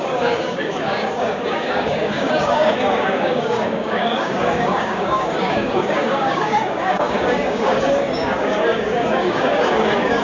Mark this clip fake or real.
fake